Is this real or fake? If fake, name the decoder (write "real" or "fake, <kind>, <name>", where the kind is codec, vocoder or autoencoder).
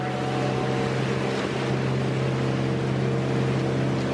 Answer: real